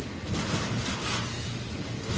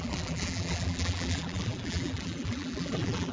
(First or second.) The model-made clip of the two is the second